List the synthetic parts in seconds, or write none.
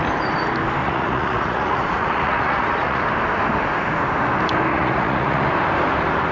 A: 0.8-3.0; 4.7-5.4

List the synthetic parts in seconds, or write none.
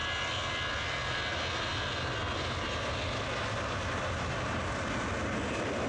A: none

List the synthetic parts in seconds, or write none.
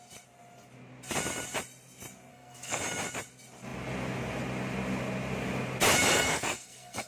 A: 2.3-2.8; 6.1-7.1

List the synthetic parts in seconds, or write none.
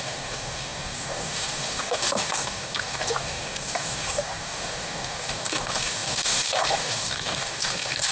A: 0.0-8.1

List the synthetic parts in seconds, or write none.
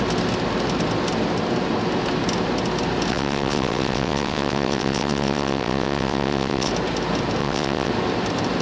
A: 3.1-6.7; 7.4-7.9